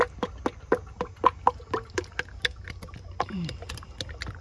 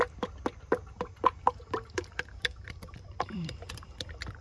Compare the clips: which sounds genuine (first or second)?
first